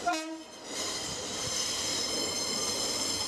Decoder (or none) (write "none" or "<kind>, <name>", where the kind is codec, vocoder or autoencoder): none